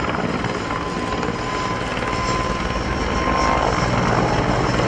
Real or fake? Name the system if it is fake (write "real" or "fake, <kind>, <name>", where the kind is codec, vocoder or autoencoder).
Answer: real